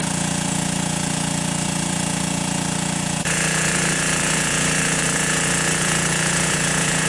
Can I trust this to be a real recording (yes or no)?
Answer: no